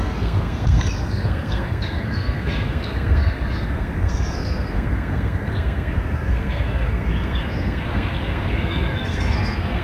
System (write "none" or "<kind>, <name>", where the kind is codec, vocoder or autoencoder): codec, SNAC